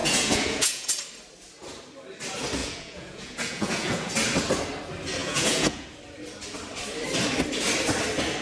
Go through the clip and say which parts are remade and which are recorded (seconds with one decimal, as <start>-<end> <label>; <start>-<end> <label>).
0.0-0.9 remade; 0.9-2.6 recorded; 2.6-4.1 remade; 4.1-5.2 recorded; 5.2-6.0 remade; 6.0-8.4 recorded